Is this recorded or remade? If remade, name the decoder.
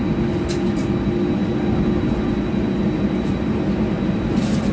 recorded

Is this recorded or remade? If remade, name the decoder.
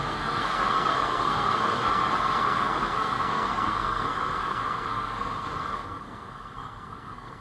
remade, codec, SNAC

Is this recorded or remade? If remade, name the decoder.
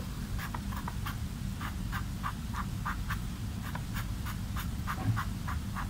recorded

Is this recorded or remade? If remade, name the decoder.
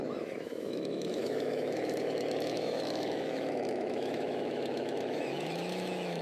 remade, autoencoder, DAC-VAE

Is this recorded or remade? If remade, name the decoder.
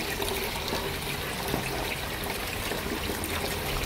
recorded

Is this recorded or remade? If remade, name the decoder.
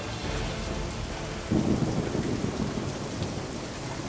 recorded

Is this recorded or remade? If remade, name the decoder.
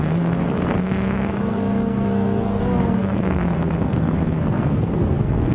remade, codec, SNAC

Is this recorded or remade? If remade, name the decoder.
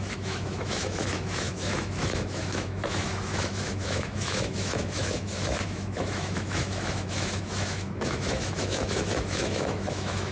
remade, autoencoder, DAC-VAE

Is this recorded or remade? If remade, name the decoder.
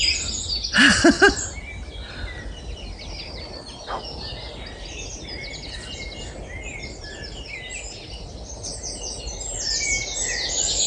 recorded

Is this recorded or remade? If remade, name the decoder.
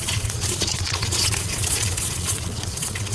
remade, vocoder, Vocos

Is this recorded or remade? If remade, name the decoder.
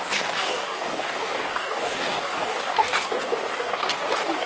remade, codec, DAC